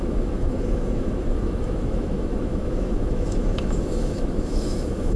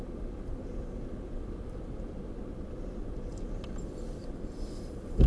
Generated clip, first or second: first